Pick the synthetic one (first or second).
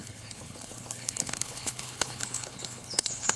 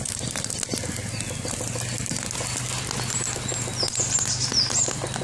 first